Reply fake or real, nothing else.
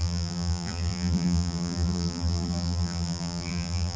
fake